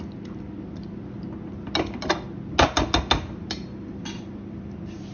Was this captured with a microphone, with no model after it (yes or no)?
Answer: yes